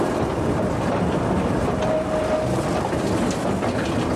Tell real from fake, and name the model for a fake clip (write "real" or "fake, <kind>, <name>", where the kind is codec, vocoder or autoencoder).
real